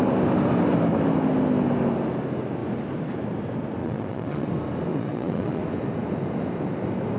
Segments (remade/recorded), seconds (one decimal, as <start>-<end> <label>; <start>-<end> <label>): 0.0-3.8 recorded; 3.8-4.5 remade; 4.5-4.9 recorded; 4.9-5.6 remade; 5.6-7.2 recorded